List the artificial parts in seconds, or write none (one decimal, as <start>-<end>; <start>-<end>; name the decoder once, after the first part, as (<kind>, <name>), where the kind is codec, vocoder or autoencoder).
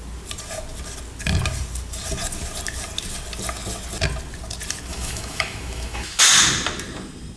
4.9-6.2 (autoencoder, DAC-VAE)